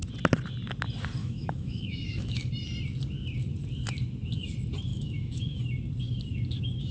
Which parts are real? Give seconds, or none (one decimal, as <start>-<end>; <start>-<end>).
0.0-1.2; 2.5-4.9; 5.6-6.9